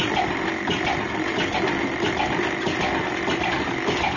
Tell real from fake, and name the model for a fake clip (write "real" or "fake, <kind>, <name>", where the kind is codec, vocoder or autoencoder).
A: real